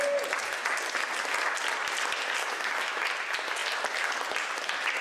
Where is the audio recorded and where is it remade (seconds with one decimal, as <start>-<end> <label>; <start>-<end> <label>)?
0.0-2.4 recorded; 2.4-3.0 remade; 3.0-5.0 recorded